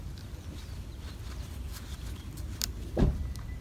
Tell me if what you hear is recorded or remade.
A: recorded